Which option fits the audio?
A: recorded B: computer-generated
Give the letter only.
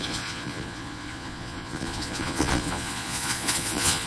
B